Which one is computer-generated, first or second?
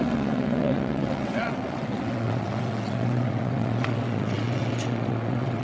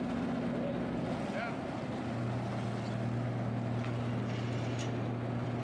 first